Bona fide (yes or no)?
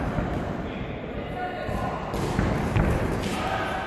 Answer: yes